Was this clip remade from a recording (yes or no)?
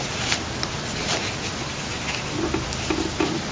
no